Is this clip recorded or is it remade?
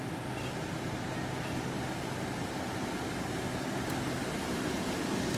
recorded